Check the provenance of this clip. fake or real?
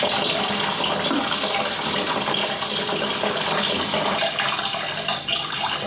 real